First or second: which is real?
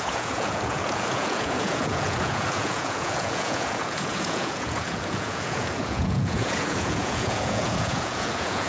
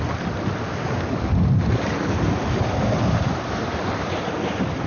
second